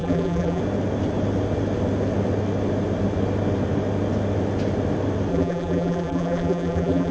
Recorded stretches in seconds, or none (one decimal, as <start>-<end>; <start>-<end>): 0.6-5.3